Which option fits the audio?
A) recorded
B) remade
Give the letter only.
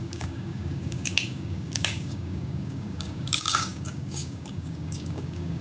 B